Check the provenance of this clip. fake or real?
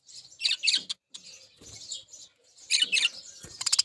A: real